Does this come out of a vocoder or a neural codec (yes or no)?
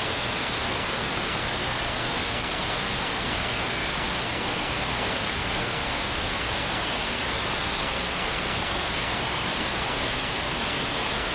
yes